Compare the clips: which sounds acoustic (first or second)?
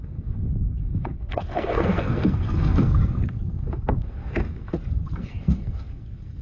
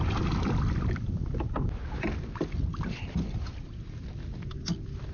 second